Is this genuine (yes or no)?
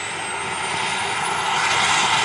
yes